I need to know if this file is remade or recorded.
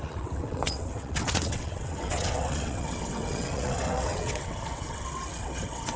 remade